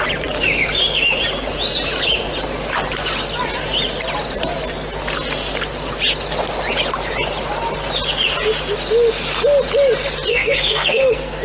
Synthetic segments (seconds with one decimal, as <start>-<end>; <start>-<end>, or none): 10.3-11.4